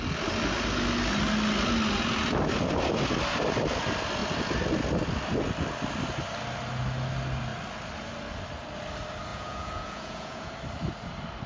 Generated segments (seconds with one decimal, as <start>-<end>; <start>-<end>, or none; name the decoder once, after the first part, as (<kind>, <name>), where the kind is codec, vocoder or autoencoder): 9.3-10.5 (vocoder, Vocos)